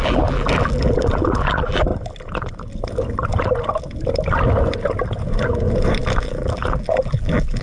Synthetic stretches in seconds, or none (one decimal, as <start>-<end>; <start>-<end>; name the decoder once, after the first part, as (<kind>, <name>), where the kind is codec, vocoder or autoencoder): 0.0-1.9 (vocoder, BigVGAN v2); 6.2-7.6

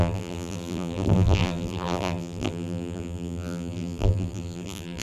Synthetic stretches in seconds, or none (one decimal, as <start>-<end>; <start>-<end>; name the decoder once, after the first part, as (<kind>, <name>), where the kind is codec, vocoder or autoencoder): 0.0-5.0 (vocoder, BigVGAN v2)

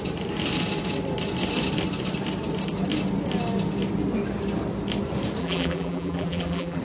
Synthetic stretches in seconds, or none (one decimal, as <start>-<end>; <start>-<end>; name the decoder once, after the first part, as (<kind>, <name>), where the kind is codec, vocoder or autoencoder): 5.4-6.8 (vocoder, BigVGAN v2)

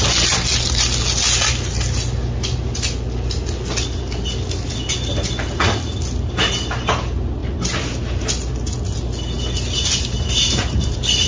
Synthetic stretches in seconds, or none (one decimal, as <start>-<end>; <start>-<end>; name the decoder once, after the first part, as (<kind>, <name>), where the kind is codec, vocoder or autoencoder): none

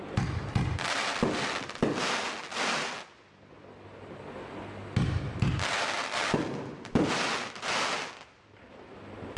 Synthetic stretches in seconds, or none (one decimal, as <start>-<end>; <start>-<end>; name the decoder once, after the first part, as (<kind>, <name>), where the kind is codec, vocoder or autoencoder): none

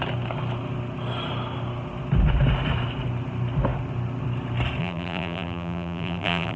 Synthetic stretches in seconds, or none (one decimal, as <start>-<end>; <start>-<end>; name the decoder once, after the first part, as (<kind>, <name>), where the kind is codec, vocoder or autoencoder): 4.8-6.6 (vocoder, BigVGAN v2)

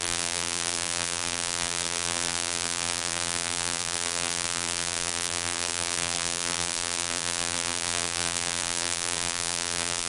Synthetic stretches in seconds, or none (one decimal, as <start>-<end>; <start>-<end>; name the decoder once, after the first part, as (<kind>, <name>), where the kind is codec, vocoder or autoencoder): 0.0-10.1 (vocoder, BigVGAN v2)